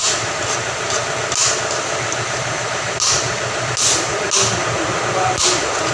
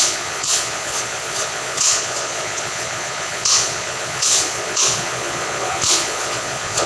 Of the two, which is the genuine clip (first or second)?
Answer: first